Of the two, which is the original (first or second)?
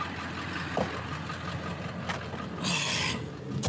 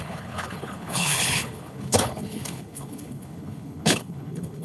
first